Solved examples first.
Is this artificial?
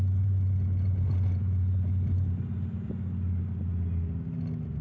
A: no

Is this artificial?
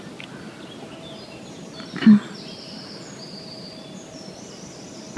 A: no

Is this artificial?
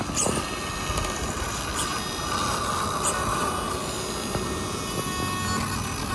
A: no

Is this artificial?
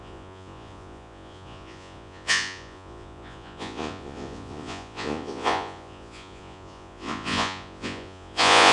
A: yes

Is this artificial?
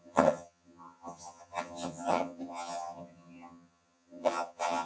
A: yes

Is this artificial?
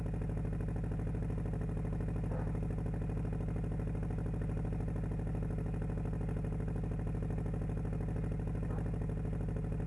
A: no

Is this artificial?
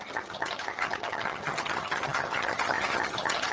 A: yes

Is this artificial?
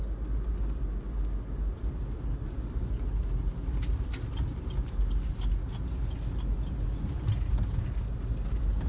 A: no